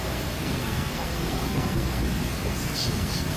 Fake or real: fake